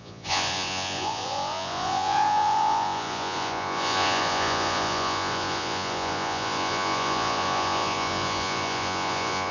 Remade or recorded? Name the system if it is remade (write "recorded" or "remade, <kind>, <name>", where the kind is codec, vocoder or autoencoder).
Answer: remade, vocoder, Vocos